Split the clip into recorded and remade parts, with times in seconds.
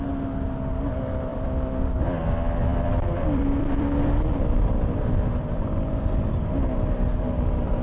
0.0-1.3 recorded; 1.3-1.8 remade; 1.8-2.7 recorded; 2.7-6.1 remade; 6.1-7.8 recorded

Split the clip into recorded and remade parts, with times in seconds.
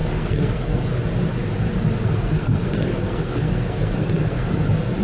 0.0-1.0 remade; 1.0-2.0 recorded; 2.0-4.6 remade; 4.6-5.0 recorded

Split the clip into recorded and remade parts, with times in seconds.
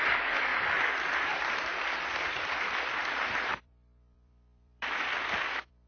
0.0-0.5 remade; 0.5-1.3 recorded; 1.3-5.9 remade